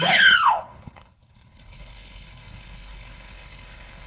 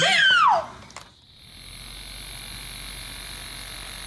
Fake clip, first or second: first